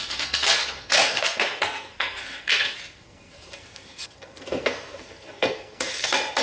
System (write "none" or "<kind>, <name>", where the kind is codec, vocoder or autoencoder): codec, SNAC